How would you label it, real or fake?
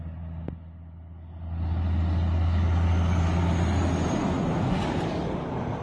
real